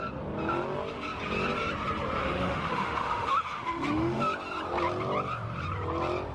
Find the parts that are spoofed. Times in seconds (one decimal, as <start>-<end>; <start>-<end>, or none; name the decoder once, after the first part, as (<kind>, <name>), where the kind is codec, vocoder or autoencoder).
2.2-4.2 (autoencoder, DAC-VAE)